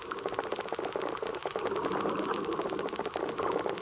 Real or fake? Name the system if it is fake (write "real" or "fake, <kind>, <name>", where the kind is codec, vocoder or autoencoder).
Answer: real